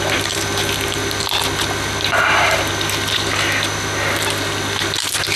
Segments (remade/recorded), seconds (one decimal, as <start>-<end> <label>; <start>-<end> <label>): 0.0-5.4 recorded